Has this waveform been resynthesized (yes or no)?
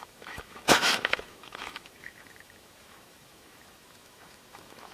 yes